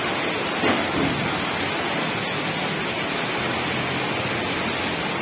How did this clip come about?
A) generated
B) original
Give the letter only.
B